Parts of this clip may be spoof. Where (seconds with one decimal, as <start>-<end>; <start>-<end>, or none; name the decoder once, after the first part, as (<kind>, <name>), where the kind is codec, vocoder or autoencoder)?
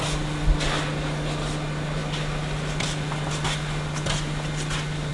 none